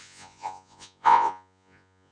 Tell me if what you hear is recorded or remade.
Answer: remade